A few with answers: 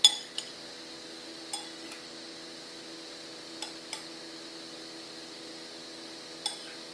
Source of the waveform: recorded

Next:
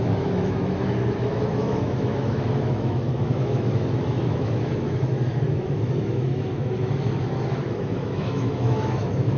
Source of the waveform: remade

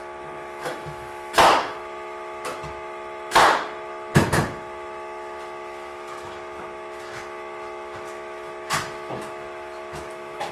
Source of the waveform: remade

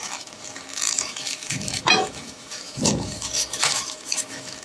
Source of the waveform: remade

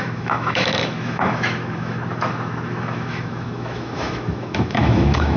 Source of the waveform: remade